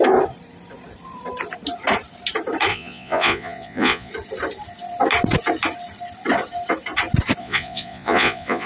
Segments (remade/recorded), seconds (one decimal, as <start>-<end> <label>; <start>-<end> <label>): 0.0-2.7 recorded; 2.7-4.1 remade; 4.1-7.4 recorded; 7.4-8.7 remade